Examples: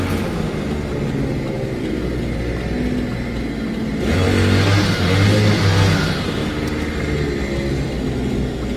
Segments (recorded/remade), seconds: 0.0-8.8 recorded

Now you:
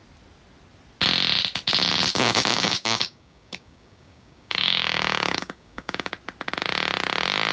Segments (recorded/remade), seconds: 0.0-2.1 recorded; 2.1-6.1 remade; 6.1-7.5 recorded

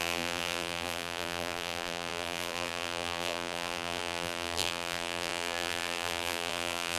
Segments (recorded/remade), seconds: 0.0-7.0 remade